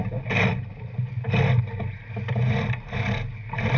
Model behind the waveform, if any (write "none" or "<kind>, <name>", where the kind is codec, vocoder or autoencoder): none